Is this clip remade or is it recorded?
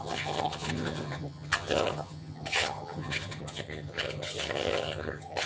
remade